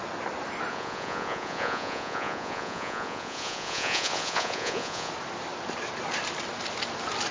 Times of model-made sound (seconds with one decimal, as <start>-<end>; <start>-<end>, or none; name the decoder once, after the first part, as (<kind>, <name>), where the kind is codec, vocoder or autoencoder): 0.7-5.1 (vocoder, Vocos)